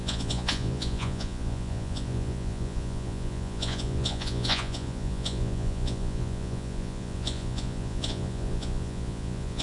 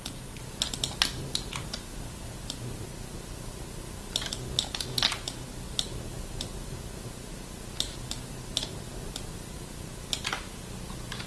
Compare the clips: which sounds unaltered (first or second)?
second